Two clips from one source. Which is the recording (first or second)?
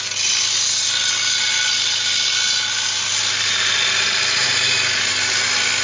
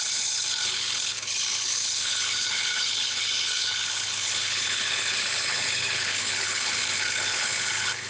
first